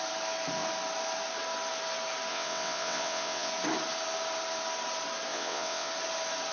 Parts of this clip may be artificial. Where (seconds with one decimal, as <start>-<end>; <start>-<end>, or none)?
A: 2.3-3.5; 5.3-5.9

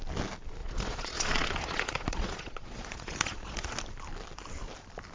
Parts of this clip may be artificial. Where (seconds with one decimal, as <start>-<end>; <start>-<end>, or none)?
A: 0.6-3.7

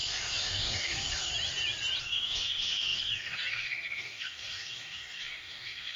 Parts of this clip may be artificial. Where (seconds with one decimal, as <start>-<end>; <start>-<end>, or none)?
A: 0.0-1.3; 2.0-6.0

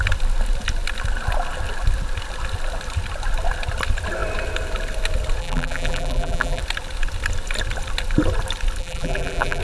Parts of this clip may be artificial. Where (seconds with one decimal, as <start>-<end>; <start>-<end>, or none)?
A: 5.4-6.6; 8.8-9.6

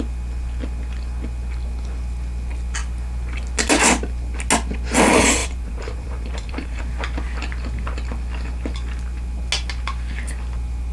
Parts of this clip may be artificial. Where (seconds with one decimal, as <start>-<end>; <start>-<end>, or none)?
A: 5.4-6.8

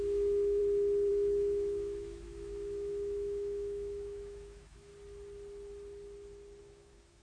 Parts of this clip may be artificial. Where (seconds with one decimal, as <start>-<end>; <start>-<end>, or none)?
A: 0.0-0.6; 1.1-4.9; 6.6-7.2

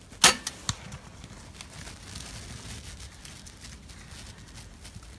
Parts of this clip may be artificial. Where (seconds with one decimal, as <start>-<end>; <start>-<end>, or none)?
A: none

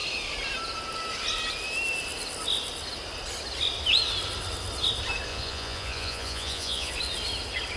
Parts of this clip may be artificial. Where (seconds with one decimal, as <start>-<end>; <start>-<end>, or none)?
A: 5.3-6.9